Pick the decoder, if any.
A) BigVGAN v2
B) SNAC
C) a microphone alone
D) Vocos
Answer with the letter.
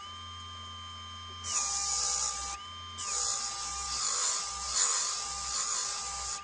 C